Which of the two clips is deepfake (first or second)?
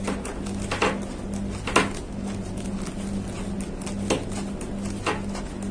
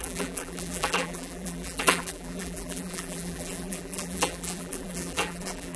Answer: second